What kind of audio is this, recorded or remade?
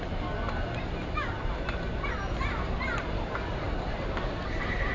recorded